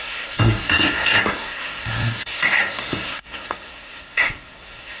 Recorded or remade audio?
remade